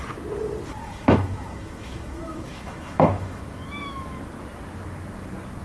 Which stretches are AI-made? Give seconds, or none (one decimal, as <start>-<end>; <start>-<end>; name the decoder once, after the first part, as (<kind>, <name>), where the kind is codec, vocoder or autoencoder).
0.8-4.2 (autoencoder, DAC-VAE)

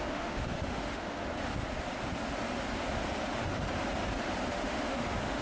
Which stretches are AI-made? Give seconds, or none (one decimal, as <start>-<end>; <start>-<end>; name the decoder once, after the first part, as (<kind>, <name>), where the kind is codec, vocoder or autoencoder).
0.0-1.3 (autoencoder, DAC-VAE); 4.5-5.4

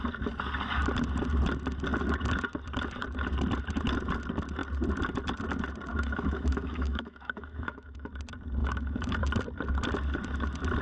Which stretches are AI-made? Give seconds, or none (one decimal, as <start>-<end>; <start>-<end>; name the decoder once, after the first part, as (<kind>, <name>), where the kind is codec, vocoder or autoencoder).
5.9-8.1 (autoencoder, DAC-VAE); 8.6-9.2

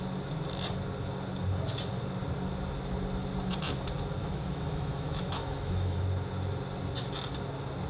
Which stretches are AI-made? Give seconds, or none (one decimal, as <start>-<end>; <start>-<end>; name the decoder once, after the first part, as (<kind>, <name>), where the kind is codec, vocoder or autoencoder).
4.2-6.0 (autoencoder, DAC-VAE)

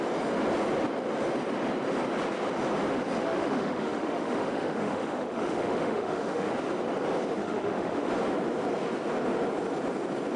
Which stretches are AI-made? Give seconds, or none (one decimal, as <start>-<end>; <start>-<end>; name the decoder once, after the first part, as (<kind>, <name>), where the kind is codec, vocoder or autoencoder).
3.2-6.5 (autoencoder, DAC-VAE); 7.4-8.1

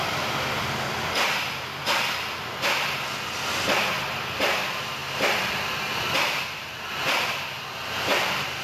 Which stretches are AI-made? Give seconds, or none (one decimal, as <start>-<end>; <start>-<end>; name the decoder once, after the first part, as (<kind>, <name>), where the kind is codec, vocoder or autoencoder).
none